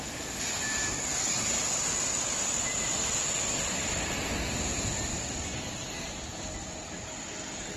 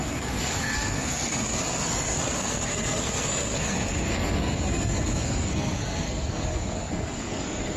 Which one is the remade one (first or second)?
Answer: second